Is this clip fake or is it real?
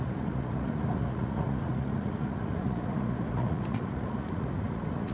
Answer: fake